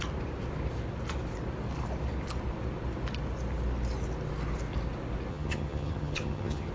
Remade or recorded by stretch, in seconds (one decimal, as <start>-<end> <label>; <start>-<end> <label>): 0.0-5.3 recorded; 5.3-6.7 remade